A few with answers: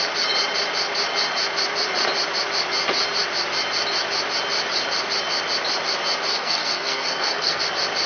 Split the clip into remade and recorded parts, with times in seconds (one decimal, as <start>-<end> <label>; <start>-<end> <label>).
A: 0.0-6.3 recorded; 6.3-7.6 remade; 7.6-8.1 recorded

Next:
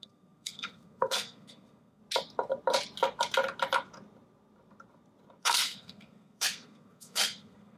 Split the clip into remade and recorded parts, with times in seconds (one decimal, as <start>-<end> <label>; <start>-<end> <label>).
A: 0.0-2.0 remade; 2.0-5.4 recorded; 5.4-7.8 remade

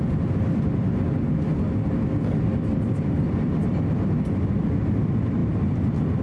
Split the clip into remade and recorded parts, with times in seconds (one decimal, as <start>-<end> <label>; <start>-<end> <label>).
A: 0.0-6.2 recorded

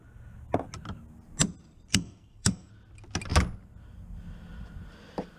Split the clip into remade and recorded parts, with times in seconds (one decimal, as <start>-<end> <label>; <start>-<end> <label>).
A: 0.0-1.9 recorded; 1.9-2.7 remade; 2.7-5.4 recorded

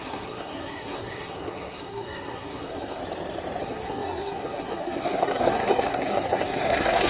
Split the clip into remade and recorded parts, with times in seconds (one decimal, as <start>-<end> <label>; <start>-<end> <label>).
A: 0.0-3.0 remade; 3.0-3.6 recorded; 3.6-7.1 remade